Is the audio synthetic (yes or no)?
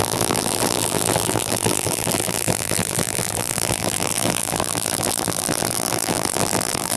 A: yes